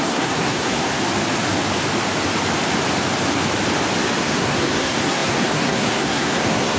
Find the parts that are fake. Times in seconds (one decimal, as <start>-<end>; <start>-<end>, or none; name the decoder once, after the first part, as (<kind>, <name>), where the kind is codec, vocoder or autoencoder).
0.0-0.9 (codec, SNAC); 4.2-6.8